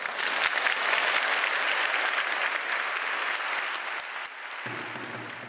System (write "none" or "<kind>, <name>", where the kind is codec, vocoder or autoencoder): none